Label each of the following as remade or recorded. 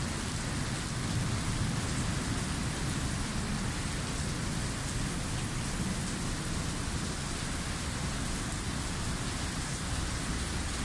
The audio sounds recorded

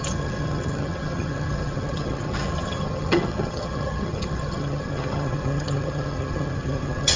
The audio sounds remade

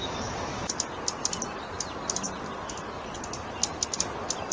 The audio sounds recorded